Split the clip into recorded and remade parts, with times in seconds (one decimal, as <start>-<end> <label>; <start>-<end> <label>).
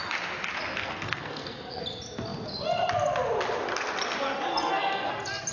0.0-0.8 recorded; 0.8-1.8 remade; 1.8-4.5 recorded; 4.5-5.1 remade; 5.1-5.5 recorded